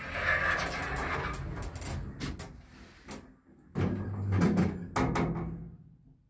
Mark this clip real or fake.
real